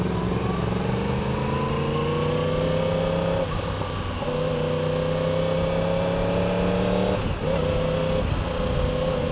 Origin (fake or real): real